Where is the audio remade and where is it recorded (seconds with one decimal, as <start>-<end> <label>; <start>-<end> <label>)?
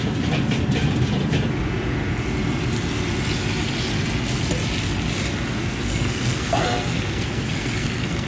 0.0-5.6 recorded; 5.6-8.3 remade